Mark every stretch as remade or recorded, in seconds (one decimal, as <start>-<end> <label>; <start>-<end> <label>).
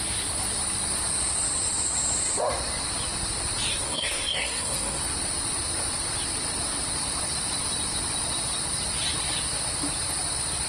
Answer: 0.0-3.7 recorded; 3.7-5.0 remade; 5.0-10.7 recorded